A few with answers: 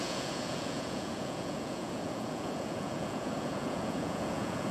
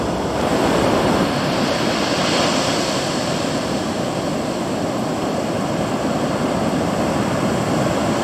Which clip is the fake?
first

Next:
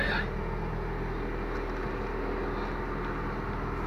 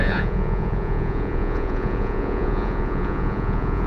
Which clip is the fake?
second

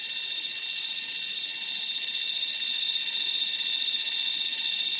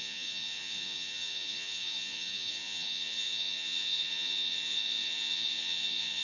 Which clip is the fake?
second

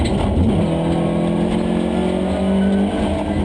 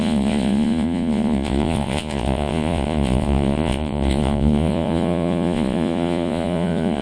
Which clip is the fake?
second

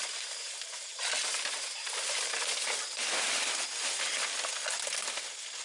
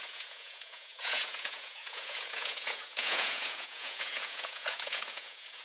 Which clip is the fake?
second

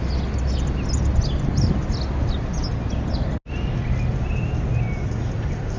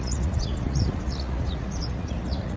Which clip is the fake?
second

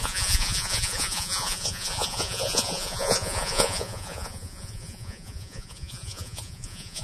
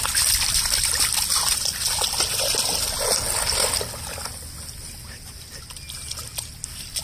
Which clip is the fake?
first